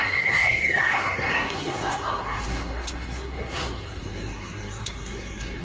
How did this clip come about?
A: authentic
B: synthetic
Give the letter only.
B